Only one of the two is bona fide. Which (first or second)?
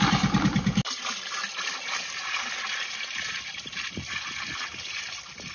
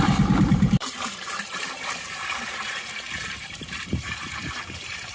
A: first